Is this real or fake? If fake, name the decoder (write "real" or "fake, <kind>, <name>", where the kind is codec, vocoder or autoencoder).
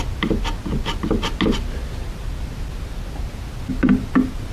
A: real